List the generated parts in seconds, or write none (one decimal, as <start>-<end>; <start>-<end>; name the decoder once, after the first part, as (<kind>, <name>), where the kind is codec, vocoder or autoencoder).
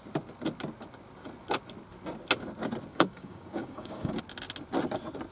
2.9-4.2 (codec, DAC)